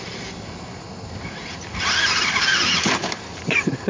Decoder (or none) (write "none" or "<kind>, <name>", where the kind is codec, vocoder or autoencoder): none